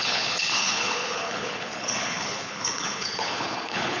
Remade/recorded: remade